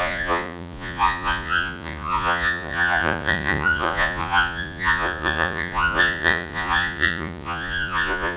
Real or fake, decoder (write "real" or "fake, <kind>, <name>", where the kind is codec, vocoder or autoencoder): fake, vocoder, Vocos